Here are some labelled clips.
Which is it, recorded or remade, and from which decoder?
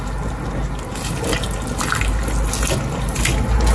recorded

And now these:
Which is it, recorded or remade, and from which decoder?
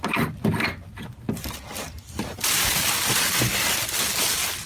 recorded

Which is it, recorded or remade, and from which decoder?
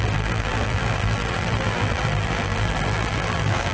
remade, vocoder, BigVGAN v2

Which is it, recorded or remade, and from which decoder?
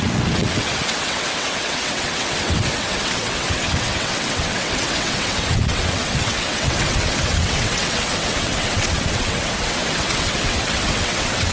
remade, vocoder, WaveNeXt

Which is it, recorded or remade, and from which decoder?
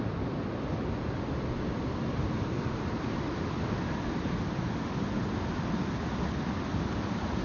recorded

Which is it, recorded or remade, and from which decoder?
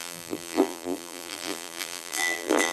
remade, vocoder, BigVGAN v2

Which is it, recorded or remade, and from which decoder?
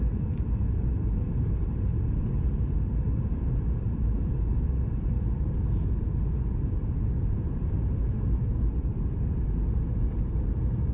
remade, vocoder, BigVGAN v2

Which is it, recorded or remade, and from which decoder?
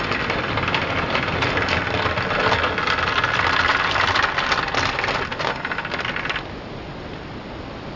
recorded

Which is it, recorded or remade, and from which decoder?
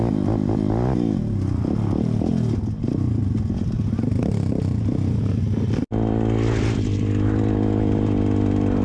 recorded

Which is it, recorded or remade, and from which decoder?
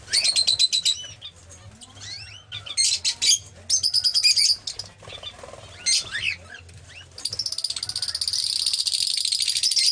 recorded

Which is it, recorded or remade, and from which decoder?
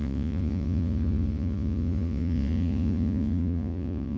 remade, vocoder, Vocos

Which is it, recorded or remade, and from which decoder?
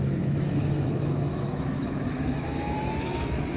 remade, autoencoder, DAC-VAE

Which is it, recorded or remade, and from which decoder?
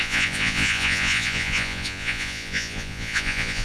remade, vocoder, Vocos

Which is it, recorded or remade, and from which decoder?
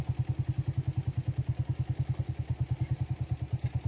recorded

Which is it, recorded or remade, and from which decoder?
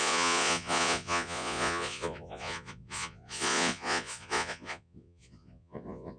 remade, vocoder, Vocos